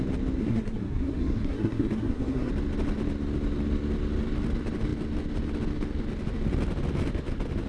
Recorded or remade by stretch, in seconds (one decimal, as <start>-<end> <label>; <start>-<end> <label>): 0.0-0.4 recorded; 0.4-2.5 remade; 2.5-7.7 recorded